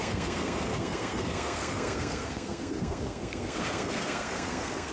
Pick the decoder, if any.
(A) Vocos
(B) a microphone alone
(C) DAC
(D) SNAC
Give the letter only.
D